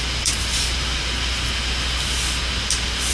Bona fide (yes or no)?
yes